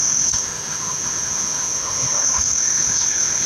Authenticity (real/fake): fake